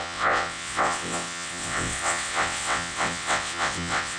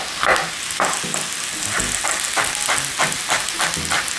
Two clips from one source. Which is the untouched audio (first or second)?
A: second